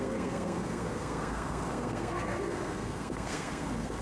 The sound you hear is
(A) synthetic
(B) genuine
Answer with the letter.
A